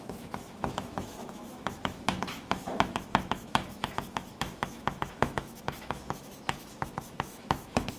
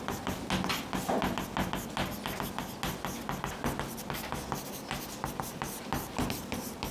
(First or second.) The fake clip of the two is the first